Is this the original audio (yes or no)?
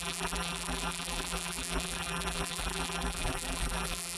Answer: no